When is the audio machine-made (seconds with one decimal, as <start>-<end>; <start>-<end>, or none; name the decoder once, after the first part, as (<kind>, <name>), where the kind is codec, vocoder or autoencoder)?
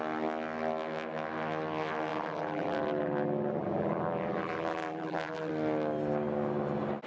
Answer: 2.1-5.5 (vocoder, BigVGAN v2)